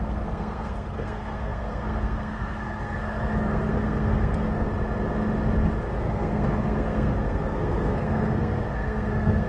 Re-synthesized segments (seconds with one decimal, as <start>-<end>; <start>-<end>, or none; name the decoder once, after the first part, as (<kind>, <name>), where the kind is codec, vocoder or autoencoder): 0.0-4.7 (codec, SNAC); 6.0-9.5